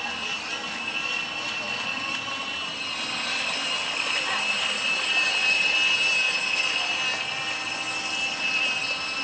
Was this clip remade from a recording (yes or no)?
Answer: no